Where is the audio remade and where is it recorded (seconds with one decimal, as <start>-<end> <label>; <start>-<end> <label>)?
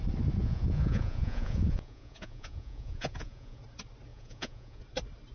0.0-0.4 recorded; 0.4-3.6 remade; 3.6-4.1 recorded; 4.1-4.8 remade; 4.8-5.3 recorded